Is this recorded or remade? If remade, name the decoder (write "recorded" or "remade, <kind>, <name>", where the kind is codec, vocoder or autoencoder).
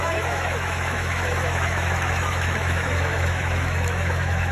remade, autoencoder, DAC-VAE